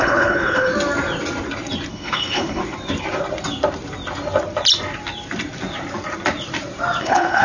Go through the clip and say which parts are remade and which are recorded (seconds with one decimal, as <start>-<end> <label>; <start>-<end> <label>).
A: 0.0-0.7 remade; 0.7-1.9 recorded; 1.9-2.6 remade; 2.6-7.0 recorded; 7.0-7.4 remade